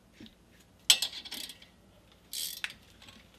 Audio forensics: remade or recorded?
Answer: recorded